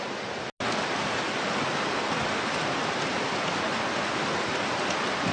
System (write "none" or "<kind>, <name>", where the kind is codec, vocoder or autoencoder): none